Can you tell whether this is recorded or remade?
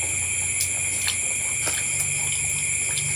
recorded